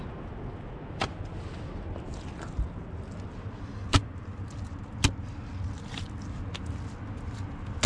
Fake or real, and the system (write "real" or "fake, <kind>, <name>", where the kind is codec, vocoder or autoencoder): real